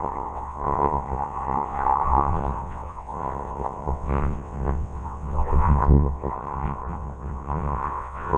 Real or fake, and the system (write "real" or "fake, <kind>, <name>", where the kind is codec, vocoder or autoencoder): fake, vocoder, WaveNeXt